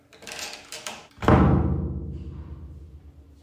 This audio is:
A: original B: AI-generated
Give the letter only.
A